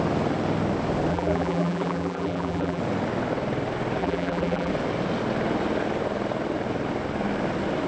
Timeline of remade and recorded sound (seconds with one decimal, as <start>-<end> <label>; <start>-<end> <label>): 0.0-1.1 recorded; 1.1-2.8 remade; 2.8-4.0 recorded; 4.0-4.7 remade; 4.7-7.9 recorded